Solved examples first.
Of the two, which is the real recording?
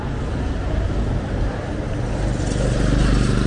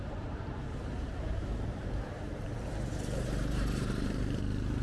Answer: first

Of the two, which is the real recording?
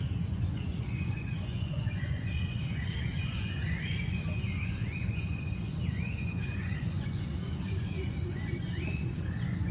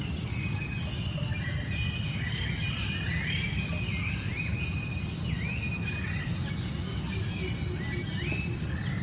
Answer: second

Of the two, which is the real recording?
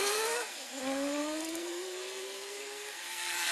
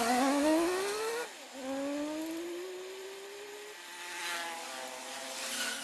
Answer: second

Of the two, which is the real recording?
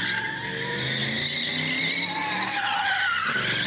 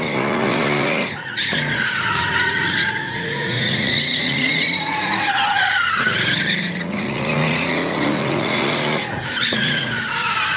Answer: first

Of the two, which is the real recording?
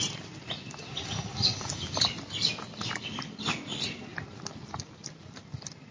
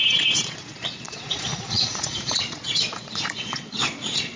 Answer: first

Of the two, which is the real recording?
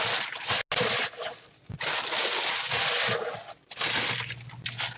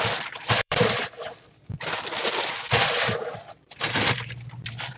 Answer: first